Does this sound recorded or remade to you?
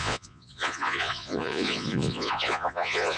remade